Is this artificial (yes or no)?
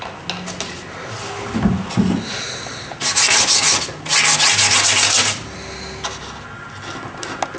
no